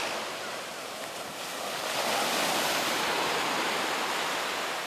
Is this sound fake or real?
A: real